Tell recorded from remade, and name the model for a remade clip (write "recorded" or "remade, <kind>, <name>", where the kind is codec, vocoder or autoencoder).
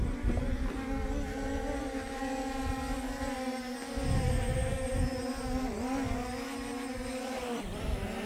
recorded